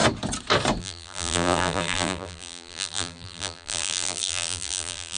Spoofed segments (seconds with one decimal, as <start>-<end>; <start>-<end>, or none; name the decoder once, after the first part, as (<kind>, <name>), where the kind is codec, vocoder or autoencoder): 0.8-5.2 (vocoder, BigVGAN v2)